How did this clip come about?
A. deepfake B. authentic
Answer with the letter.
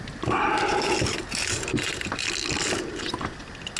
B